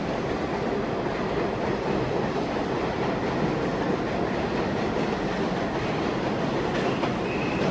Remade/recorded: recorded